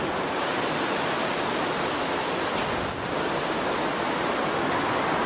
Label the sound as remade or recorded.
recorded